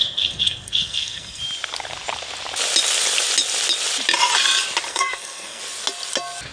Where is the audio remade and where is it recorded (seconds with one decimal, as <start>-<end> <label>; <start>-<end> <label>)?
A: 0.0-1.4 remade; 1.4-4.9 recorded; 4.9-5.6 remade; 5.6-6.5 recorded